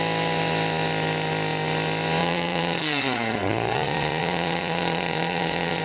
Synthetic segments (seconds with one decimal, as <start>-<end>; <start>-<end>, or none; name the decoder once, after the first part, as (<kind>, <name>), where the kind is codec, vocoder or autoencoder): 2.2-5.8 (vocoder, Vocos)